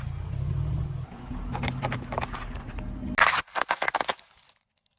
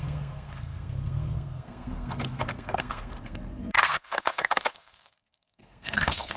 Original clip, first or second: first